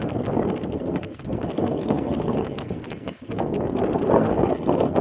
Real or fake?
fake